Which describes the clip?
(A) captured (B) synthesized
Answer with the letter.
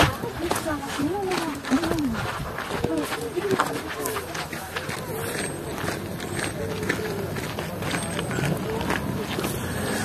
A